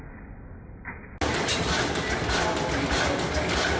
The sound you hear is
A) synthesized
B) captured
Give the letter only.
B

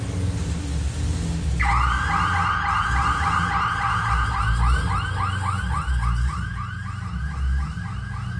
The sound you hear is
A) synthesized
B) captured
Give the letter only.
B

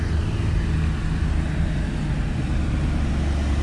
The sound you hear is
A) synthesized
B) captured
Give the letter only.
B